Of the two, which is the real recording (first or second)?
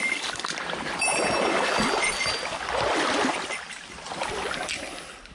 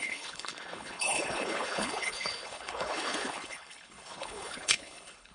first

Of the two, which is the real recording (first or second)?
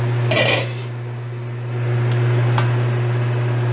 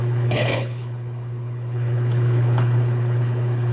first